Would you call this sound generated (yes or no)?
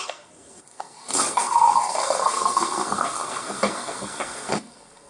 yes